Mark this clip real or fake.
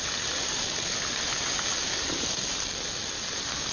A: real